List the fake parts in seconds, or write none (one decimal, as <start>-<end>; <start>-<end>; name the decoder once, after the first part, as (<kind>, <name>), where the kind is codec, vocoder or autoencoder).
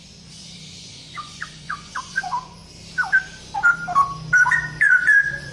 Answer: 0.0-2.6 (vocoder, Vocos); 4.8-5.5